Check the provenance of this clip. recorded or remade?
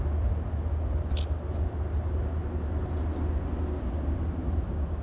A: recorded